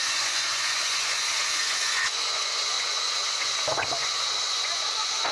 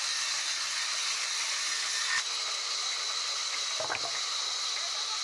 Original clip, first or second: second